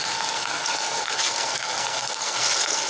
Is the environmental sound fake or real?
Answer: fake